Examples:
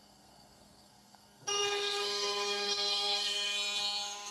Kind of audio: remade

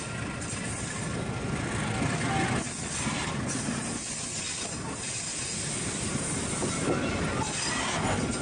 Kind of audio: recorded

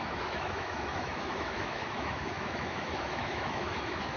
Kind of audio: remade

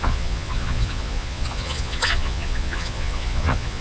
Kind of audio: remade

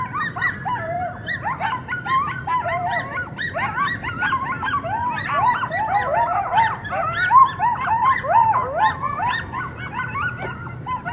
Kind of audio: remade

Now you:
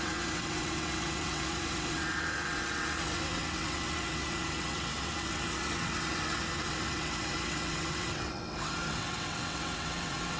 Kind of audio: remade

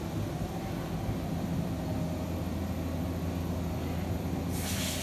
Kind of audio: recorded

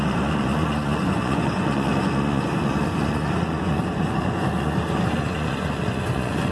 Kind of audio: remade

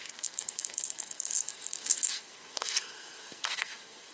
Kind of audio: remade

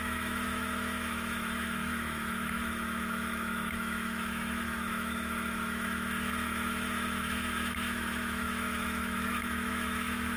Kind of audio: remade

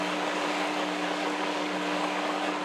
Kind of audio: remade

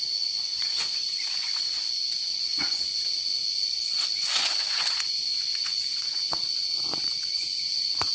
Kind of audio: remade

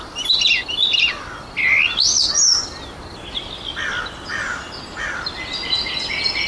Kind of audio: recorded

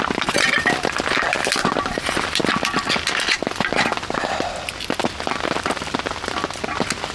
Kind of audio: recorded